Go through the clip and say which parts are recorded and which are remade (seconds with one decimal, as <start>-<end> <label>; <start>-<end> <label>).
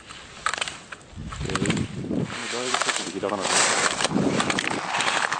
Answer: 0.0-2.4 recorded; 2.4-3.3 remade; 3.3-5.4 recorded